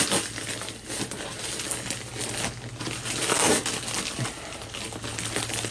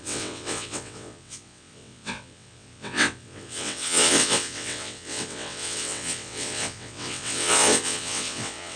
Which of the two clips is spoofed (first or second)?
second